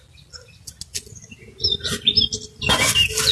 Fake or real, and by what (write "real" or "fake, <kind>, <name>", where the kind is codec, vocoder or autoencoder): real